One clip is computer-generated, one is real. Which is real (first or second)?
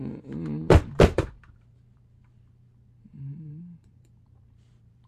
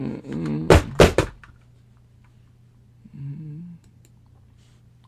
second